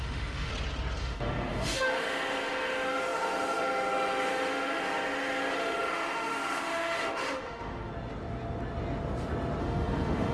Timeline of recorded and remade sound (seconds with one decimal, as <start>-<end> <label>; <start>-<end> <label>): 0.0-0.5 remade; 0.5-1.0 recorded; 1.0-7.9 remade; 7.9-9.6 recorded; 9.6-10.3 remade